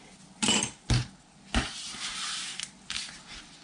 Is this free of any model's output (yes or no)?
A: yes